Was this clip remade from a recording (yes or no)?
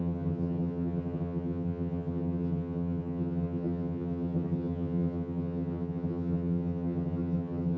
yes